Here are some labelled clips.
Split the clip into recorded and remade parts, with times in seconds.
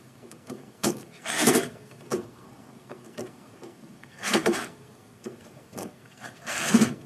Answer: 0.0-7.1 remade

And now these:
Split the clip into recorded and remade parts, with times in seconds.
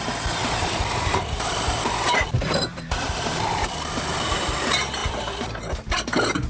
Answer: 0.0-0.4 recorded; 0.4-4.3 remade; 4.3-5.0 recorded; 5.0-5.6 remade; 5.6-6.5 recorded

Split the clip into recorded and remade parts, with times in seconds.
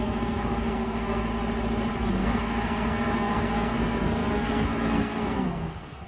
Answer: 0.0-1.3 remade; 1.3-2.1 recorded; 2.1-6.1 remade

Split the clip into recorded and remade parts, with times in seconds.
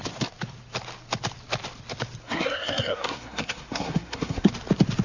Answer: 0.0-2.2 recorded; 2.2-4.5 remade; 4.5-5.0 recorded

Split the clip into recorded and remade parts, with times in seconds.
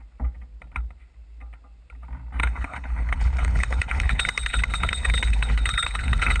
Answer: 0.0-2.4 recorded; 2.4-6.4 remade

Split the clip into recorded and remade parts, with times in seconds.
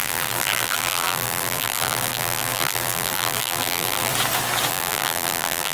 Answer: 0.0-4.1 remade; 4.1-4.7 recorded; 4.7-5.7 remade